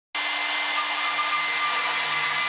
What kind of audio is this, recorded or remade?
recorded